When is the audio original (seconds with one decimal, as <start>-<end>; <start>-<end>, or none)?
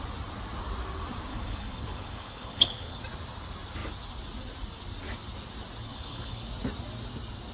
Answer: 0.0-1.3; 3.0-5.9; 6.5-7.5